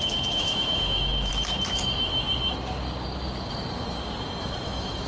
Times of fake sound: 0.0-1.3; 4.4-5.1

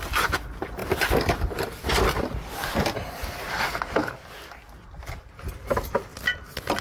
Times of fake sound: 0.0-4.0; 5.4-6.1

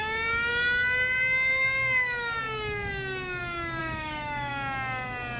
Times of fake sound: 3.8-4.5

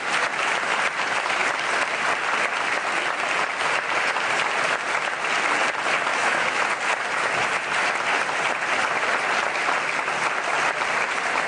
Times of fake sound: 6.1-6.6

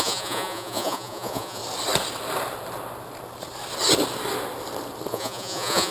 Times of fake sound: 0.0-1.6; 5.1-5.9